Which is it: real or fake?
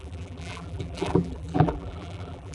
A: fake